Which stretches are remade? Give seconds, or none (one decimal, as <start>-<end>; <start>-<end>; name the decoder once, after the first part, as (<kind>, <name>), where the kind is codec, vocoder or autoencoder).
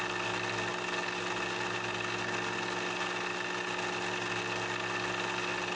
none